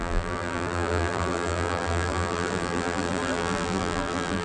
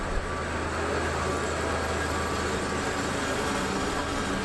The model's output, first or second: first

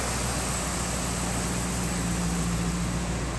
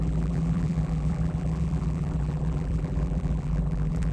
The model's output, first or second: second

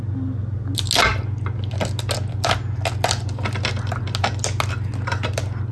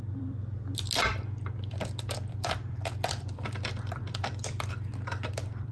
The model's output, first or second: second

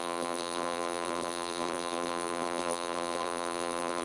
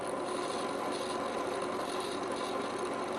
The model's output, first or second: first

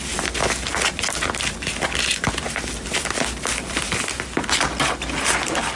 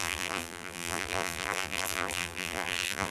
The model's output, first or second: second